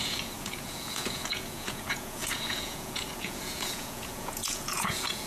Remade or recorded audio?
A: remade